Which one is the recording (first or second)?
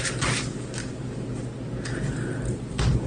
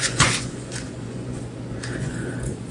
first